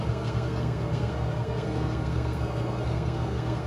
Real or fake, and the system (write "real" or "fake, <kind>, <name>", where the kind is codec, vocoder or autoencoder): fake, codec, SNAC